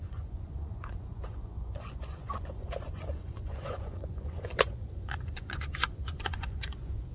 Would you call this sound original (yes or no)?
no